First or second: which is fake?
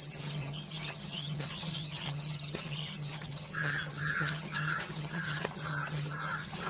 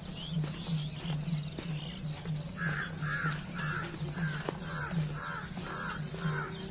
first